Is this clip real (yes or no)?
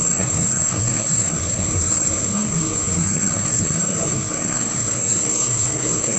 no